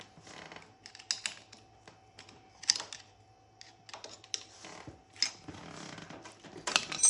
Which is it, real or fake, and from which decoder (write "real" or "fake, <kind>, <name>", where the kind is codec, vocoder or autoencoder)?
real